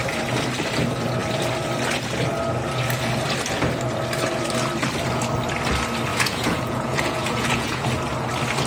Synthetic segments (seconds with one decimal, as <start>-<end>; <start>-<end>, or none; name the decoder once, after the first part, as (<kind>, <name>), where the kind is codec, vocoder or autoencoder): 6.1-7.8 (vocoder, Vocos)